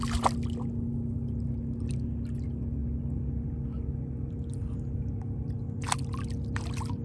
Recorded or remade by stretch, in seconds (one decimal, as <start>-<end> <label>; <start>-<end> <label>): 0.0-7.0 recorded